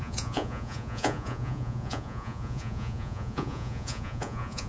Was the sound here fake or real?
fake